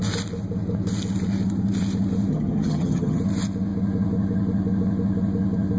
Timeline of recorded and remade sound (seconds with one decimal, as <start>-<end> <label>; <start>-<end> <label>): 0.0-2.3 recorded; 2.3-3.2 remade; 3.2-5.8 recorded